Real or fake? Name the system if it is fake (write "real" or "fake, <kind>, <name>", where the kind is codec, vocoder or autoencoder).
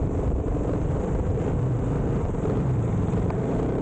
fake, vocoder, BigVGAN v2